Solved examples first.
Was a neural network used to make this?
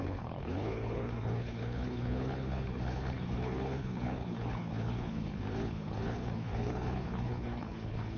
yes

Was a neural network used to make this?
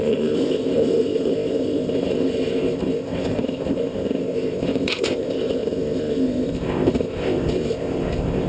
yes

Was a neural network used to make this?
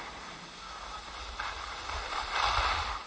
no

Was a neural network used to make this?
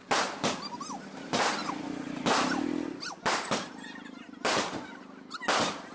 no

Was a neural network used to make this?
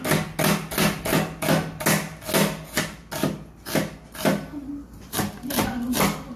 no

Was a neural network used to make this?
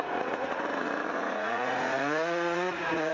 yes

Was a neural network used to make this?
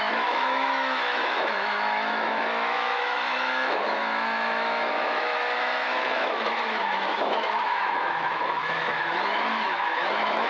yes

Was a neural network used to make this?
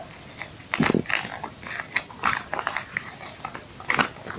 no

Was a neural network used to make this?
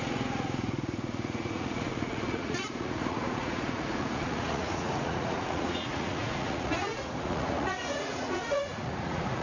yes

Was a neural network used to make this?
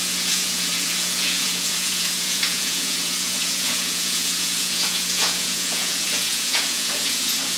yes